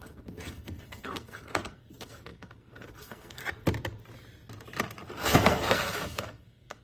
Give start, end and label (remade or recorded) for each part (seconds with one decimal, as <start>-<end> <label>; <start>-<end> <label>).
0.0-3.4 remade; 3.4-5.1 recorded; 5.1-6.8 remade